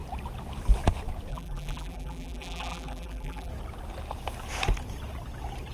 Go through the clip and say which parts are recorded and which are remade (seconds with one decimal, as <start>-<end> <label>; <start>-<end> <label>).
0.0-1.3 recorded; 1.3-3.5 remade; 3.5-5.7 recorded